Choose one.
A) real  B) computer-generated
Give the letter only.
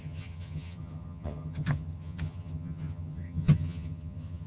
B